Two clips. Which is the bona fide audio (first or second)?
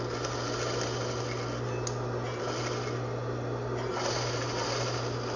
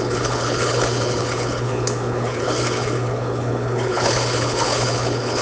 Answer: first